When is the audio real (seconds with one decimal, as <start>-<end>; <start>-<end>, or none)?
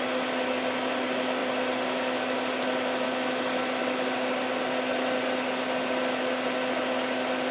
0.0-7.5